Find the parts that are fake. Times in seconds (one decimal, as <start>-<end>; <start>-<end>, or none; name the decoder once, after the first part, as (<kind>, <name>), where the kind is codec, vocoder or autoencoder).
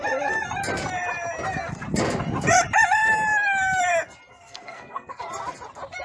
4.3-5.2 (codec, SNAC)